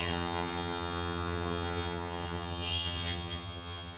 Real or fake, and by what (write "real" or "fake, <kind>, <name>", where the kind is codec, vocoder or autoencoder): fake, vocoder, HiFi-GAN